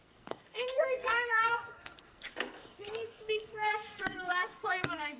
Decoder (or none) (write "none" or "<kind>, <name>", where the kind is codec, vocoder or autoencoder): codec, SNAC